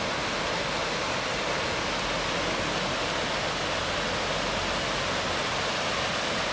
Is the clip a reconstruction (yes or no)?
no